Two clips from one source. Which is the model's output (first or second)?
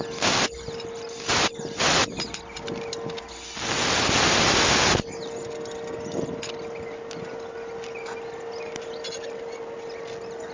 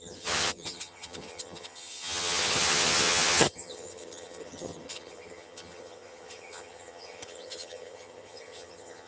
second